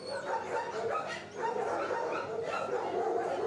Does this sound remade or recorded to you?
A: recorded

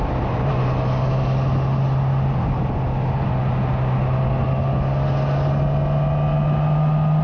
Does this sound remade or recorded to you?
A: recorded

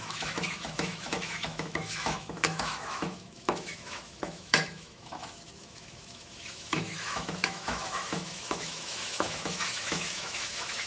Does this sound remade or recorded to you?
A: remade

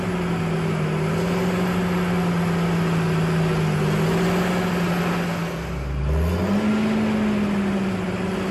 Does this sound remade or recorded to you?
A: recorded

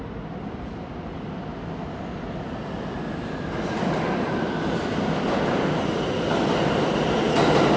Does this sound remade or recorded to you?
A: recorded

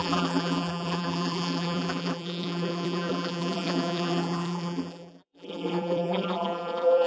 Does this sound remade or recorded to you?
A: remade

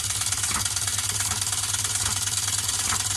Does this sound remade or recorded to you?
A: recorded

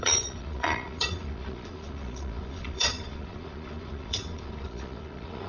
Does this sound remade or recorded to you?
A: remade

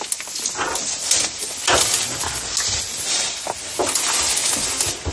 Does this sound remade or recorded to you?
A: recorded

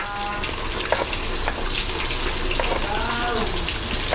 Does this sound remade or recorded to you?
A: recorded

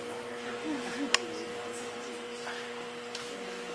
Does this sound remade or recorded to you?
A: recorded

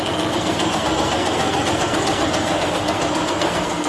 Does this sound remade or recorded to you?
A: remade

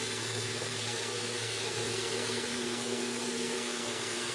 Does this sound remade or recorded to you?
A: remade